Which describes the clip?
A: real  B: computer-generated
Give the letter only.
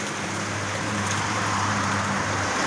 B